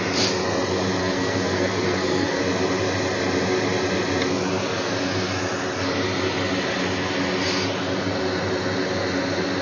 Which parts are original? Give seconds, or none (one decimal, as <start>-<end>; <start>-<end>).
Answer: 0.0-1.0; 2.4-9.6